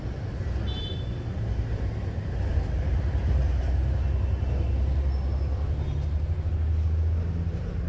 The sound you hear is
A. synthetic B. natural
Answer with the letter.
B